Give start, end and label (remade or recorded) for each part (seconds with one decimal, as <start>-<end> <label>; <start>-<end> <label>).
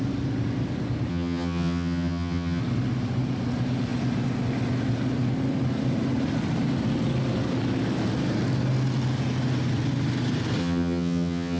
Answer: 0.0-1.1 recorded; 1.1-2.6 remade; 2.6-10.6 recorded; 10.6-11.6 remade